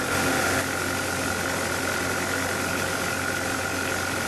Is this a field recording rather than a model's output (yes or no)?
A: yes